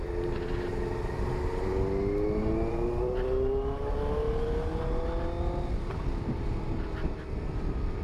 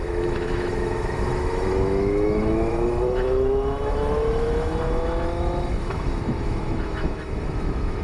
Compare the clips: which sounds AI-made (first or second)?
second